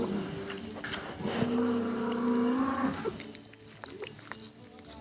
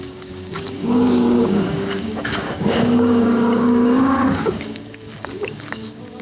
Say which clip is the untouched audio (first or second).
first